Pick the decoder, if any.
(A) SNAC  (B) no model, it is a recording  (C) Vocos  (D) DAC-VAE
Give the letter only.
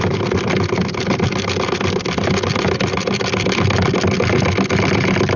B